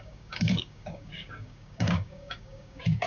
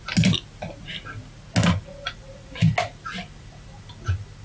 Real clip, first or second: second